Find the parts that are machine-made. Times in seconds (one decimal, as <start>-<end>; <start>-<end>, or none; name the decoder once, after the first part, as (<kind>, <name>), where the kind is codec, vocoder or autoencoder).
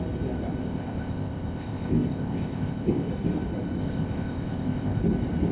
0.6-3.1 (codec, ZipCodec); 3.8-5.0